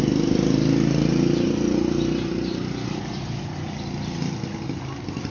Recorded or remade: recorded